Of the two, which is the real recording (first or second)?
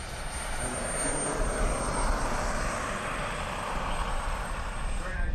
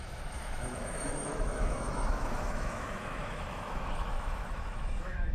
first